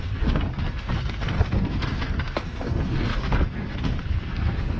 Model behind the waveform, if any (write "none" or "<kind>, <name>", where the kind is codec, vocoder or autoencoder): codec, SNAC